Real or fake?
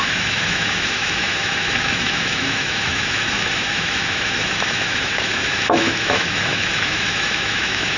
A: fake